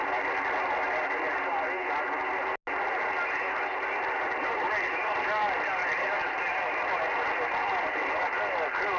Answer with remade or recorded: recorded